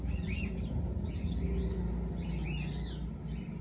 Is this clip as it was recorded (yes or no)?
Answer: yes